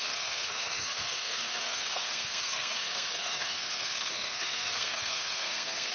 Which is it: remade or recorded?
remade